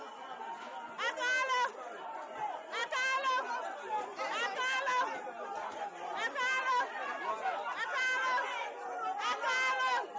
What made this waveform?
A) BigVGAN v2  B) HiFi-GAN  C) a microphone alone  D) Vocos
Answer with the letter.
C